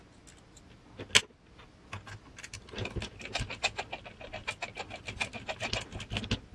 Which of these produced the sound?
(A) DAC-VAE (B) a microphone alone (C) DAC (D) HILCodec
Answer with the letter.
B